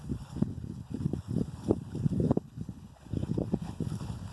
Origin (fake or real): fake